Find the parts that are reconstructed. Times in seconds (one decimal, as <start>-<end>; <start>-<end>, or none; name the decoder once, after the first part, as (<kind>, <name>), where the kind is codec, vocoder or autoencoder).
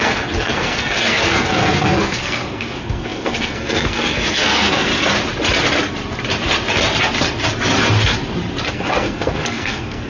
0.0-4.9 (codec, SNAC); 8.7-10.1